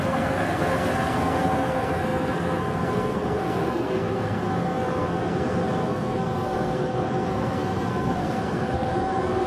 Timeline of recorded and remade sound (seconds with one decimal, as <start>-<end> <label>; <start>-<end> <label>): 0.0-9.5 remade